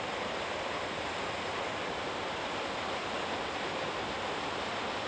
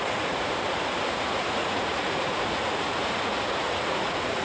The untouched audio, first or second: first